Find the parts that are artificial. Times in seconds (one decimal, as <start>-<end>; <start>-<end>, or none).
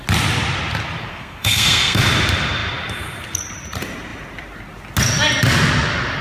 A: 1.1-2.0